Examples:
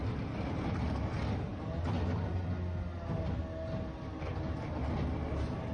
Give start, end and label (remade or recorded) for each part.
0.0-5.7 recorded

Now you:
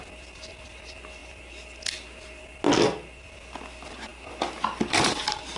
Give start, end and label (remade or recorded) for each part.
0.0-5.6 recorded

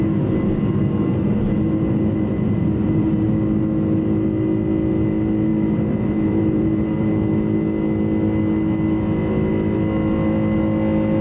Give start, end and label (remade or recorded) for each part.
0.0-5.5 recorded; 5.5-7.1 remade; 7.1-11.2 recorded

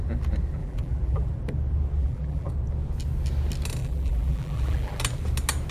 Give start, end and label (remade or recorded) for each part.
0.0-0.6 recorded; 0.6-1.3 remade; 1.3-2.0 recorded; 2.0-2.5 remade; 2.5-3.8 recorded; 3.8-5.0 remade; 5.0-5.7 recorded

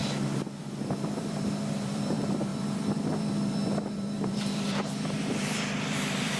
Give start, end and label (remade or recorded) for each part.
0.0-0.6 recorded; 0.6-6.4 remade